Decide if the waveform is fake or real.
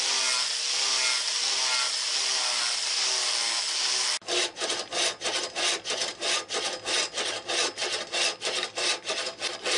real